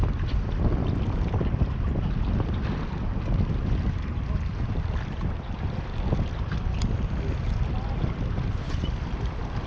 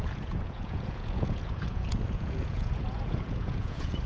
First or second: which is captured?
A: first